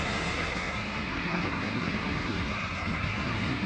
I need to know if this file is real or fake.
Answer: fake